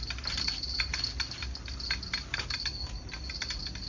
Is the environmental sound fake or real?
real